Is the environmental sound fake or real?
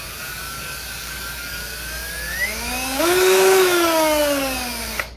fake